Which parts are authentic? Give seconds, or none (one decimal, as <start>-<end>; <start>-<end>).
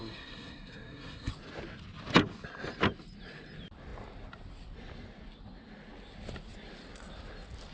1.3-7.7